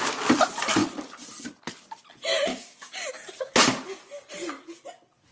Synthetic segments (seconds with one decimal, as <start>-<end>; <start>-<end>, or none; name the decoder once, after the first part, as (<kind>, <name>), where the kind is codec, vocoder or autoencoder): 2.5-3.1 (codec, DAC)